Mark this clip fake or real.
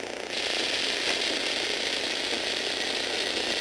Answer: real